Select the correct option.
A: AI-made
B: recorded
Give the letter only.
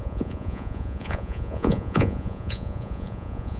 A